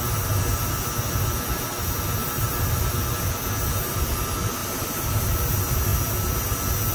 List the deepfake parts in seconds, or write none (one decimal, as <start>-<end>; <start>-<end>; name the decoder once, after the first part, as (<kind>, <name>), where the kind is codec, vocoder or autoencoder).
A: 2.2-2.9 (vocoder, BigVGAN v2); 4.6-5.5